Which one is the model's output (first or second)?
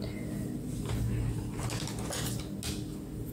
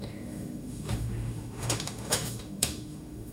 second